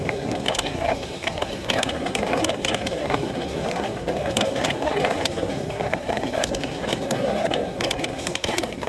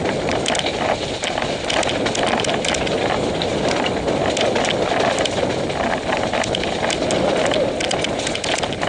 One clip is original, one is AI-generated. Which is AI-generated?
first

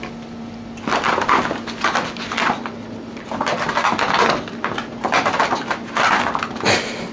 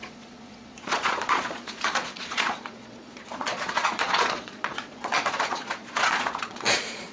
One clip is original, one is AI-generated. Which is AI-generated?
second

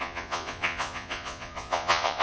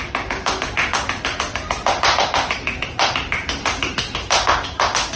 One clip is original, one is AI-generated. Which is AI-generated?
first